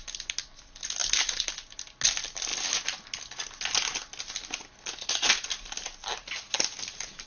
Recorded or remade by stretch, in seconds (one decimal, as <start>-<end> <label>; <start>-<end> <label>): 0.0-7.3 recorded

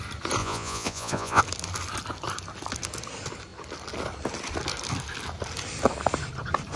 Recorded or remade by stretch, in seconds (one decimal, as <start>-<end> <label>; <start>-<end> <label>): 0.0-0.4 recorded; 0.4-1.4 remade; 1.4-6.8 recorded

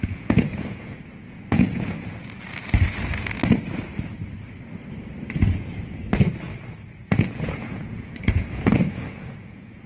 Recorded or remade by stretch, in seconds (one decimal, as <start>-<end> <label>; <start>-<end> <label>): 0.0-2.2 remade; 2.2-7.0 recorded; 7.0-9.9 remade

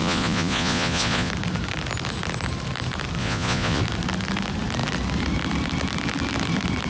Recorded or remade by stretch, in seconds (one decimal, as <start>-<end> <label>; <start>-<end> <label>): 0.0-1.3 remade; 1.3-3.2 recorded; 3.2-3.8 remade; 3.8-6.9 recorded

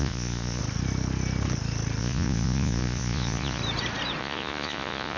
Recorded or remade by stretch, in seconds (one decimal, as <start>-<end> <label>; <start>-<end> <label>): 0.0-0.6 remade; 0.6-2.0 recorded; 2.0-3.6 remade; 3.6-4.2 recorded; 4.2-5.2 remade

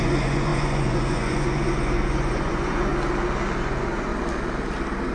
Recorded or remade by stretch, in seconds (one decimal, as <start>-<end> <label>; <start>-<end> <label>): 0.0-2.9 remade; 2.9-3.6 recorded; 3.6-4.1 remade; 4.1-5.1 recorded

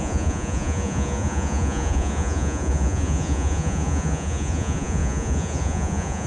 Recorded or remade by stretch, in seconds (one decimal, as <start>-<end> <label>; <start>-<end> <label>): 0.0-6.3 remade

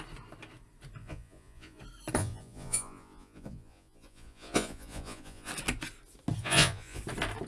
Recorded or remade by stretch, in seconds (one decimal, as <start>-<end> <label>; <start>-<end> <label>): 0.0-1.0 recorded; 1.0-1.8 remade; 1.8-2.2 recorded; 2.2-5.5 remade; 5.5-6.4 recorded; 6.4-7.0 remade; 7.0-7.5 recorded